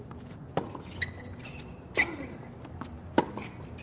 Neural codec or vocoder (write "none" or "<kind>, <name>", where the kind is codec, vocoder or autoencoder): none